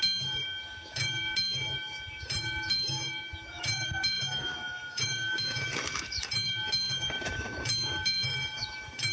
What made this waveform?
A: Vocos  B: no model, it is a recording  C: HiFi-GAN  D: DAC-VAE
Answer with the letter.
D